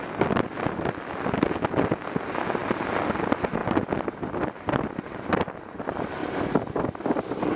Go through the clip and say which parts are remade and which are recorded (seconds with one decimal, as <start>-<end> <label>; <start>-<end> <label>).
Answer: 0.0-7.6 recorded